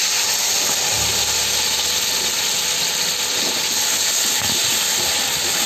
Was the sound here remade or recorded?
recorded